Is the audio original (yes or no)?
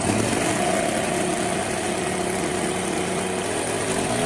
yes